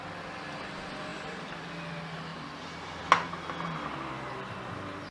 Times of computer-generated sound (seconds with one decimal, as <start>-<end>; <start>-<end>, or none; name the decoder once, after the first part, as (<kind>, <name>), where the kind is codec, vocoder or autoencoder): 1.1-1.7 (vocoder, BigVGAN v2); 2.3-3.0